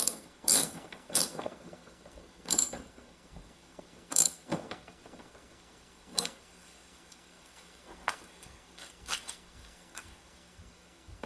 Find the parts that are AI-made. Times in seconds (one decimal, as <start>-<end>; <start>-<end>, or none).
0.0-11.3